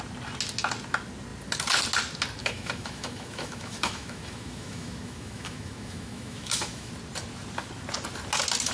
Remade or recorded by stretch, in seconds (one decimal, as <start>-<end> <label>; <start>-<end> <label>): 0.0-2.4 recorded; 2.4-6.9 remade; 6.9-8.7 recorded